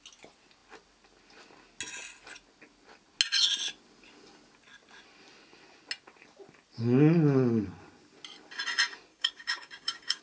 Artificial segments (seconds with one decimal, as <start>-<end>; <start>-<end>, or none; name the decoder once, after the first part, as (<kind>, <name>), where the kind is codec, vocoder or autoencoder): 9.1-10.2 (codec, DAC)